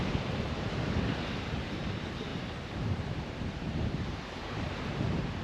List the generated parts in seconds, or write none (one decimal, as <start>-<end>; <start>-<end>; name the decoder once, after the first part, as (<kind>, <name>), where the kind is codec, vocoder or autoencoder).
0.0-5.4 (vocoder, BigVGAN v2)